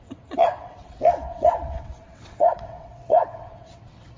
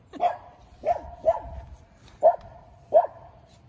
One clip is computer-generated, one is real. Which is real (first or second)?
second